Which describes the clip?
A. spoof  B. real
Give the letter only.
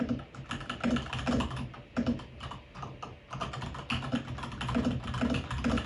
B